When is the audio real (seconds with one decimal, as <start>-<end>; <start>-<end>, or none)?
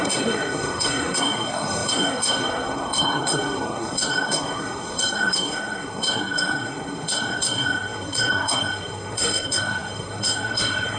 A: none